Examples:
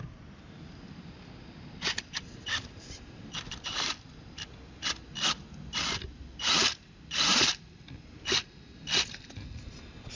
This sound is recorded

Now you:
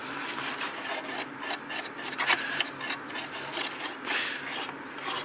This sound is recorded